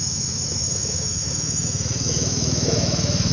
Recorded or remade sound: remade